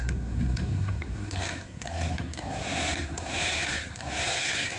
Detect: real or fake fake